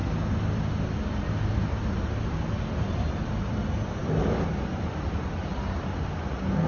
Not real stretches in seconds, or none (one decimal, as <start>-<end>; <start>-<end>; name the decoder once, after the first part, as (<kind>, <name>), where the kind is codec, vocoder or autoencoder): none

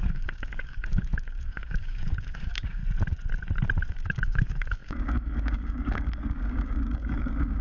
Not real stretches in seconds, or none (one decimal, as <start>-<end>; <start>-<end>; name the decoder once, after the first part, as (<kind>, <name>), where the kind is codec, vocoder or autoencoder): 0.0-2.8 (codec, DAC); 3.9-7.6

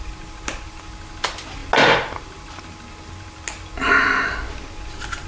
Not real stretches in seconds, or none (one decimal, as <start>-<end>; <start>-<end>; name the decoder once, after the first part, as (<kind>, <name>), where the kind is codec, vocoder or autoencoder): none

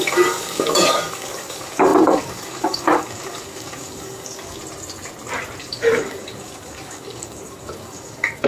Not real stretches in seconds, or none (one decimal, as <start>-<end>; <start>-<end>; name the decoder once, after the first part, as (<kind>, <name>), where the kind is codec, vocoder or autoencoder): 0.0-4.6 (codec, DAC); 5.6-8.5

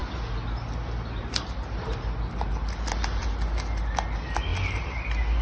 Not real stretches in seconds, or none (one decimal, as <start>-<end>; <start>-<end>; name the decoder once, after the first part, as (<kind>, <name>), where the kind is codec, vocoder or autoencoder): none